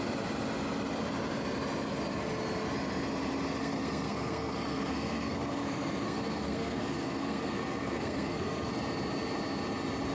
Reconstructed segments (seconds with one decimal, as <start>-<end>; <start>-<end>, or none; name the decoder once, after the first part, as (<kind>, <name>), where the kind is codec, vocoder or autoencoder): 3.6-8.7 (codec, SNAC)